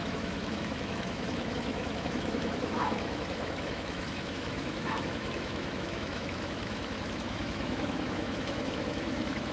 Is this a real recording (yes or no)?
no